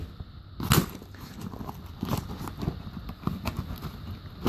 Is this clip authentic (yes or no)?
yes